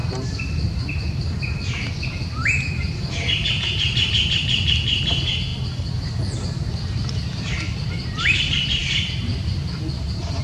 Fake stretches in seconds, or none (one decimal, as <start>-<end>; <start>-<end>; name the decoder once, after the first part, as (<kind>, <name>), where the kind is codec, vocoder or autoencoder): 0.0-10.4 (vocoder, BigVGAN v2)